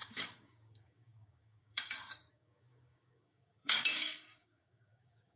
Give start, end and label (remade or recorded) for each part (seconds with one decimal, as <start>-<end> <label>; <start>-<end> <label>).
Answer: 0.0-5.4 remade